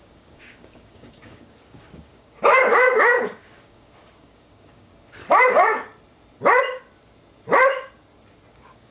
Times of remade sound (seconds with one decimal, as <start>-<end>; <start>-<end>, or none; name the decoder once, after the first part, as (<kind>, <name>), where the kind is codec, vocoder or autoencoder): 0.0-4.9 (codec, DAC); 5.5-5.9; 8.5-8.9